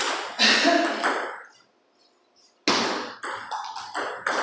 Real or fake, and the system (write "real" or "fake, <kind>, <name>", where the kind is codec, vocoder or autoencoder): real